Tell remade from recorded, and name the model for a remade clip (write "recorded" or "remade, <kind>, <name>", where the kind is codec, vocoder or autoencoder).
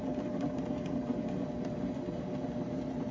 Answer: recorded